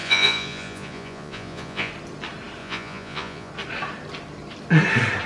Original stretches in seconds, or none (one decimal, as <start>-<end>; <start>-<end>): 1.9-2.6; 3.5-5.3